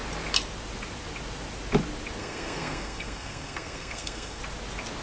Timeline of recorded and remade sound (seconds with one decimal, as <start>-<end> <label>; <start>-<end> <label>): 0.0-2.2 recorded; 2.2-4.4 remade; 4.4-5.0 recorded